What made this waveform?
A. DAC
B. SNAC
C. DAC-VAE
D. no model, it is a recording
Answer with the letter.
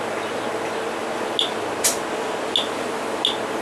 D